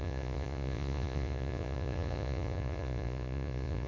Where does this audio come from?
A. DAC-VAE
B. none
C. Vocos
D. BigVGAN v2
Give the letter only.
C